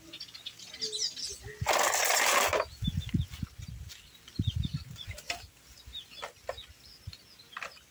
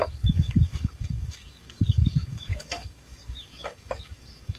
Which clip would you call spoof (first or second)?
second